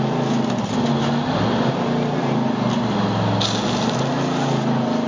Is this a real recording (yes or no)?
yes